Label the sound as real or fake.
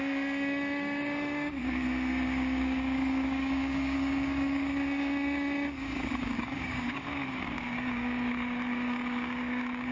fake